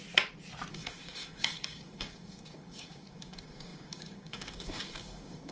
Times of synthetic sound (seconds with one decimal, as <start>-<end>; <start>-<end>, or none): 0.7-5.5